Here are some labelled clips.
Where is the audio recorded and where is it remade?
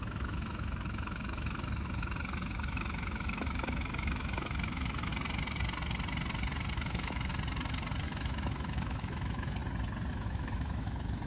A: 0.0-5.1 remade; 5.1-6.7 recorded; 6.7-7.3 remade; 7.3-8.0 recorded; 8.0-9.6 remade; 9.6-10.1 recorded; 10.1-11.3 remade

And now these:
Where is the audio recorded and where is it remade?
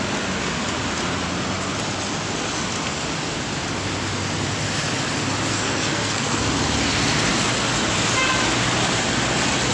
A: 0.0-5.5 recorded; 5.5-6.4 remade; 6.4-9.7 recorded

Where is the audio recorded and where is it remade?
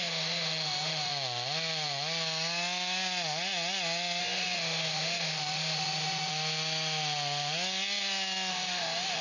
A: 0.0-1.1 remade; 1.1-4.2 recorded; 4.2-6.3 remade; 6.3-8.5 recorded; 8.5-9.2 remade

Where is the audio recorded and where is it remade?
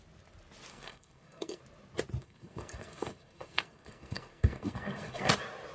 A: 0.0-0.7 recorded; 0.7-1.6 remade; 1.6-2.2 recorded; 2.2-5.3 remade; 5.3-5.7 recorded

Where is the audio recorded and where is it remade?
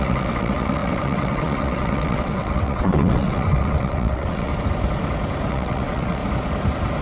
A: 0.0-4.5 remade; 4.5-5.5 recorded; 5.5-6.2 remade; 6.2-7.0 recorded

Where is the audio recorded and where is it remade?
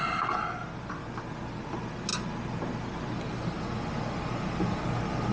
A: 0.0-5.3 recorded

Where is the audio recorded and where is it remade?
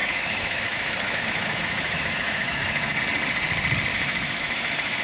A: 0.0-3.0 remade; 3.0-3.9 recorded; 3.9-5.0 remade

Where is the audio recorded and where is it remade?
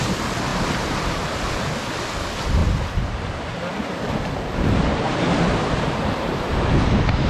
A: 0.0-0.5 recorded; 0.5-1.1 remade; 1.1-2.6 recorded; 2.6-6.7 remade; 6.7-7.3 recorded